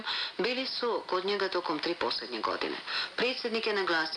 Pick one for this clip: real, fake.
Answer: real